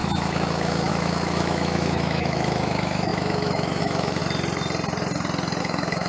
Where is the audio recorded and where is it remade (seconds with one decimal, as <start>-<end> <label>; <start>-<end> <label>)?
0.0-4.2 remade; 4.2-5.6 recorded; 5.6-6.1 remade